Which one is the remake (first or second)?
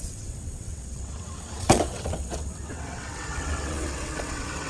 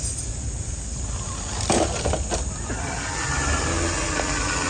first